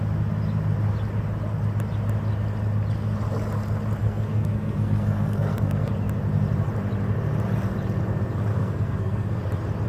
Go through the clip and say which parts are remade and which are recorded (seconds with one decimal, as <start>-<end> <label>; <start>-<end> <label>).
0.0-4.0 recorded; 4.0-5.9 remade; 5.9-8.5 recorded; 8.5-9.4 remade; 9.4-9.9 recorded